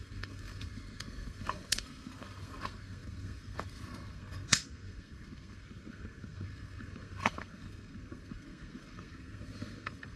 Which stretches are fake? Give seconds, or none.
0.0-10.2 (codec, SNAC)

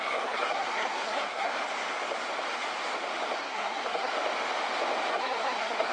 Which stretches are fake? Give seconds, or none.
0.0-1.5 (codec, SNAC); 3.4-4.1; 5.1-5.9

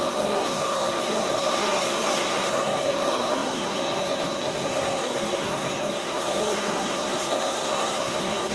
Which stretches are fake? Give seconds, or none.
0.0-8.5 (codec, SNAC)

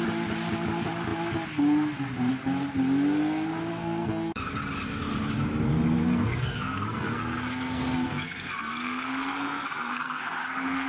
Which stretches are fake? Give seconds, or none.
3.7-4.4 (codec, SNAC); 6.0-10.9

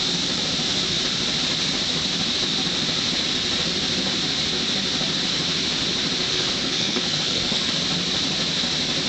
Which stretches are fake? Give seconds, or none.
6.3-7.7 (codec, SNAC)

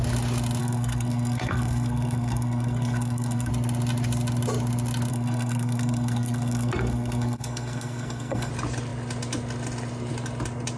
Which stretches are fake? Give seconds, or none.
0.6-3.5 (codec, SNAC); 5.1-8.5